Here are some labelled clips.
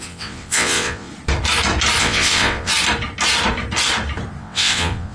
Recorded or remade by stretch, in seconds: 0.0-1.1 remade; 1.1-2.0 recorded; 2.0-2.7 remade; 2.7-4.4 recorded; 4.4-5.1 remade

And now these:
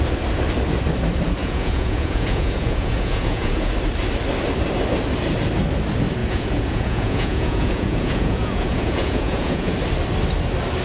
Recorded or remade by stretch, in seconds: 0.0-1.4 recorded; 1.4-3.7 remade; 3.7-6.2 recorded; 6.2-9.7 remade; 9.7-10.8 recorded